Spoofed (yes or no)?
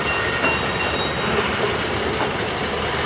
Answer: no